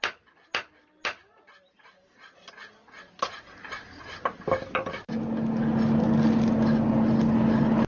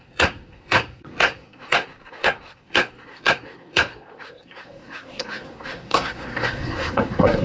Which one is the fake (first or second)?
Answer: second